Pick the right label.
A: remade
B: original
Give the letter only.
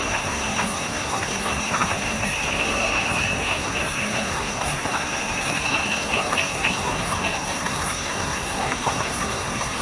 A